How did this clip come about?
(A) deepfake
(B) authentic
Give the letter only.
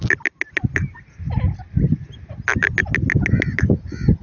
B